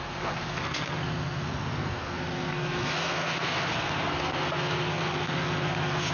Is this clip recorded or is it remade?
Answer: remade